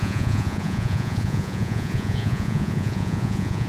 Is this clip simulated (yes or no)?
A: yes